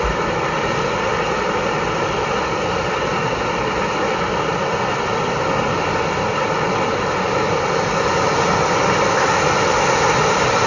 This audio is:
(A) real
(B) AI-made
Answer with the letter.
A